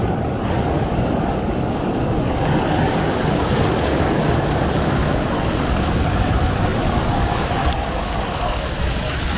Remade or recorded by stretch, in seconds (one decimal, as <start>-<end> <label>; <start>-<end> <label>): 0.0-9.4 remade